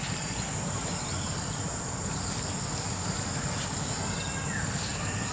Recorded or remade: recorded